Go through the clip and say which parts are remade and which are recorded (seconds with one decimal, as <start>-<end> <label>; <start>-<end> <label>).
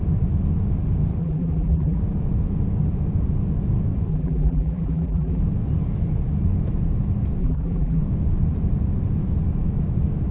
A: 0.0-1.2 recorded; 1.2-2.0 remade; 2.0-4.1 recorded; 4.1-5.4 remade; 5.4-7.4 recorded; 7.4-8.0 remade; 8.0-10.3 recorded